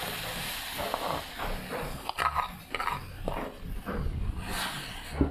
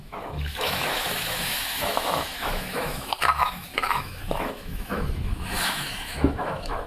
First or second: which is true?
first